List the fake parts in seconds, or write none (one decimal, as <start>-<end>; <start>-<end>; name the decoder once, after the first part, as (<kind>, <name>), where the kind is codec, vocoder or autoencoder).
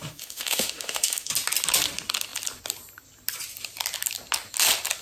0.0-1.3 (autoencoder, DAC-VAE)